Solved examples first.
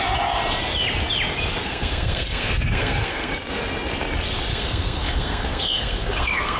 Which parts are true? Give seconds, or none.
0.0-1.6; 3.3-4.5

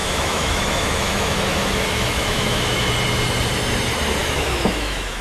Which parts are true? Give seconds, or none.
2.9-4.2

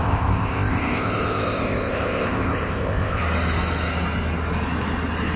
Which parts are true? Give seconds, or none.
3.2-5.4

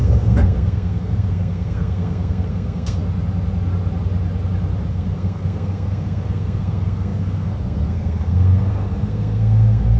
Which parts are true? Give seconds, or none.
3.0-4.9

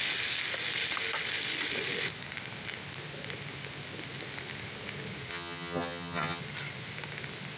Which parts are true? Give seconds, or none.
0.0-5.3; 6.4-7.6

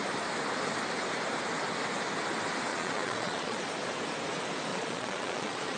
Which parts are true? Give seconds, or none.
0.0-2.7; 3.6-4.7